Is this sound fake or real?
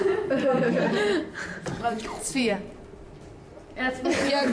fake